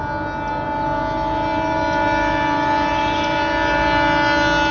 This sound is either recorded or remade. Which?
recorded